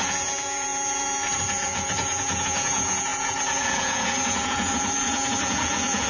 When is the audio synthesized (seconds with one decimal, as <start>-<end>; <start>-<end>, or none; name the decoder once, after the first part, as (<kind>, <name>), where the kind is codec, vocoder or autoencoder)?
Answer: 0.0-6.1 (vocoder, Vocos)